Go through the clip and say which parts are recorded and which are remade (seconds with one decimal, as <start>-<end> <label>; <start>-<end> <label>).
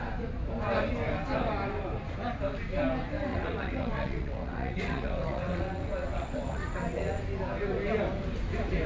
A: 0.0-3.3 recorded; 3.3-7.2 remade; 7.2-8.9 recorded